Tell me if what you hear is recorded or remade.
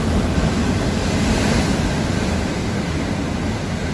recorded